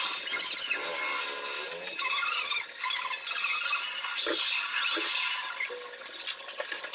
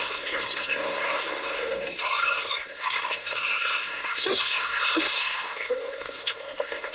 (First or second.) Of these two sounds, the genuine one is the first